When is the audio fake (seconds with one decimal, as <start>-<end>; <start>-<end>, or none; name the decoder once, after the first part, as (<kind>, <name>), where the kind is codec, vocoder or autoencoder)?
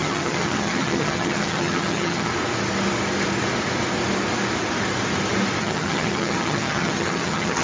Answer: 0.0-2.3 (vocoder, HiFi-GAN); 5.6-7.6